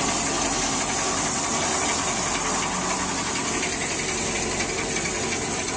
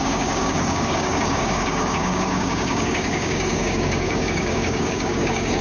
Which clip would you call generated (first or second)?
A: second